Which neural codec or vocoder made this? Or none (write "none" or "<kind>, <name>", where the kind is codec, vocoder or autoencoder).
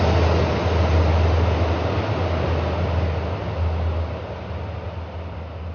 none